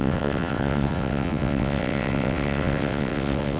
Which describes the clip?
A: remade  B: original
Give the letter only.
A